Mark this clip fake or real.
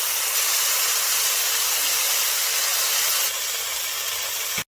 real